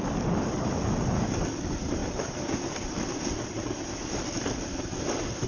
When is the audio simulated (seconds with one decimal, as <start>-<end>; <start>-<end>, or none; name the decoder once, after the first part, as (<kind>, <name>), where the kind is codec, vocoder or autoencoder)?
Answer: none